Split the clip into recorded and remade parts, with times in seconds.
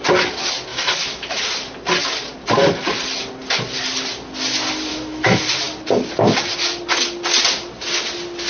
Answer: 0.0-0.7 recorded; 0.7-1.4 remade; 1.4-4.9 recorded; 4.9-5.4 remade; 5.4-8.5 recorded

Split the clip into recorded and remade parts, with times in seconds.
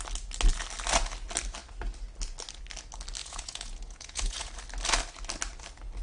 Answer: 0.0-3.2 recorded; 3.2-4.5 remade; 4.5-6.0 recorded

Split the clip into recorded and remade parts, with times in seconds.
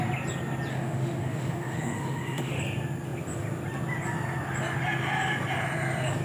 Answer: 0.0-0.7 recorded; 0.7-2.6 remade; 2.6-6.2 recorded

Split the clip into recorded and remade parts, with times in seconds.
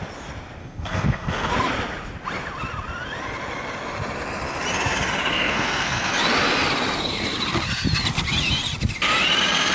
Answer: 0.0-0.6 recorded; 0.6-1.5 remade; 1.5-5.3 recorded; 5.3-6.1 remade; 6.1-9.7 recorded